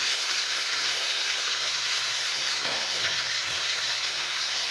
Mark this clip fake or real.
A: fake